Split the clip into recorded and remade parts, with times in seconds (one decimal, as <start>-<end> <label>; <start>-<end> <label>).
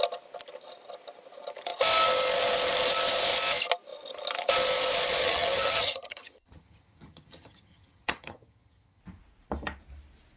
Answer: 0.0-5.2 recorded; 5.2-9.0 remade; 9.0-10.4 recorded